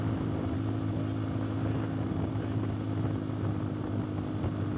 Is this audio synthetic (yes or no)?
no